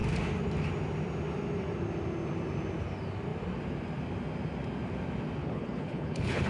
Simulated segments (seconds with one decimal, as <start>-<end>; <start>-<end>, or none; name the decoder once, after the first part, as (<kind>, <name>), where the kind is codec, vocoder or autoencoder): 5.4-6.5 (codec, HILCodec)